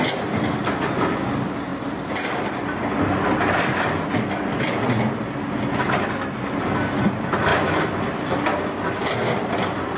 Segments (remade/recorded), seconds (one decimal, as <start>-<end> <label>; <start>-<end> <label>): 0.0-10.0 recorded